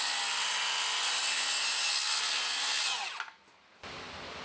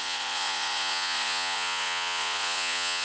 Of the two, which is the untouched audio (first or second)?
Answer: first